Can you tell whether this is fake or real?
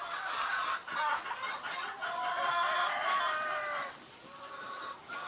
real